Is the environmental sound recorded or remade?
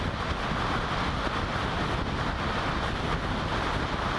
recorded